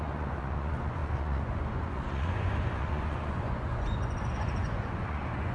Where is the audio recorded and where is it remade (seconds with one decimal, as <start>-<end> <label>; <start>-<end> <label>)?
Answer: 0.0-5.5 remade